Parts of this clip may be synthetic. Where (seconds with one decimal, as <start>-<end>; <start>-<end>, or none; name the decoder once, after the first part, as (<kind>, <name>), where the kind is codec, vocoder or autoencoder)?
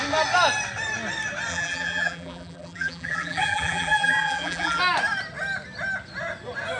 1.5-4.8 (vocoder, BigVGAN v2)